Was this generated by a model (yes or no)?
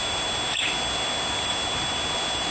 no